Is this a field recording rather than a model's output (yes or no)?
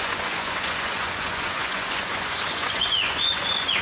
no